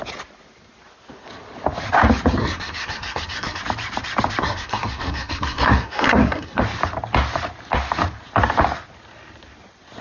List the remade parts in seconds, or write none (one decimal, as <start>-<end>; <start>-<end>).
2.4-3.6; 4.4-6.6